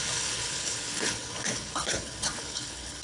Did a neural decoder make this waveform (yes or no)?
yes